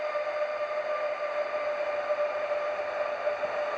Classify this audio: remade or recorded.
recorded